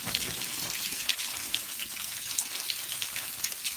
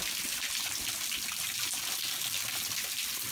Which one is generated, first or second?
first